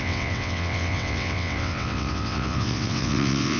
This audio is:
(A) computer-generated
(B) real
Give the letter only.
A